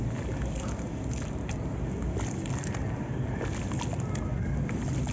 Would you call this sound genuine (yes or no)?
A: yes